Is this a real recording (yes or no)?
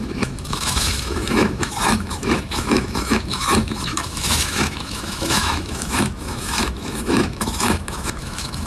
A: no